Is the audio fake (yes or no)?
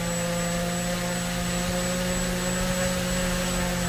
no